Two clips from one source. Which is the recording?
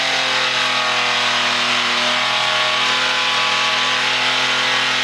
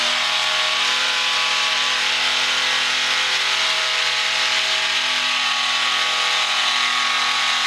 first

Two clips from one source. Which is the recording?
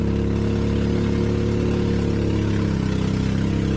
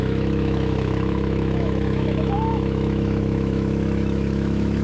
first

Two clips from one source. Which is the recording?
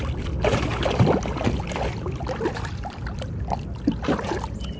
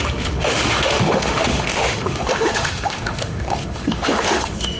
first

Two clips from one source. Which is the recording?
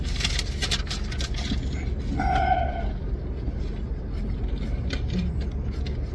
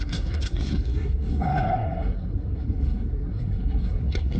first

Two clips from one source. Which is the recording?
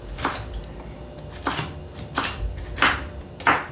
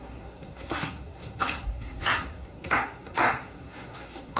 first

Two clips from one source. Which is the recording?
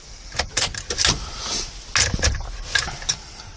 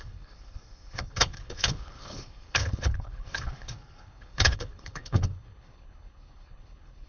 first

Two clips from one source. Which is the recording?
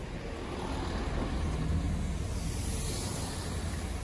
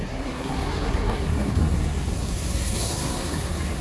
first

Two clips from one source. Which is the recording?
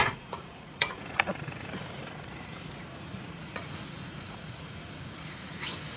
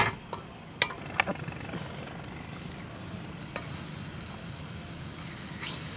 second